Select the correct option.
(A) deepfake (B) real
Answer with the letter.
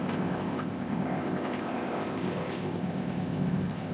A